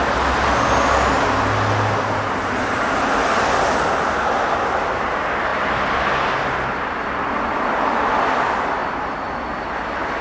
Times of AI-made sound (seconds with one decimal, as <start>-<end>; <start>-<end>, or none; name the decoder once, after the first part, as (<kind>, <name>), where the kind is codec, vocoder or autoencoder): none